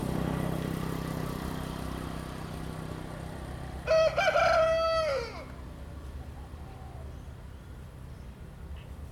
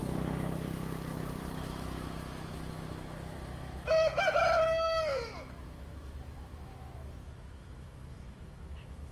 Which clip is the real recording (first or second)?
first